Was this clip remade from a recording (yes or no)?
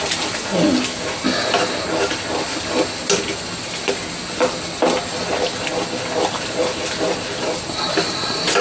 no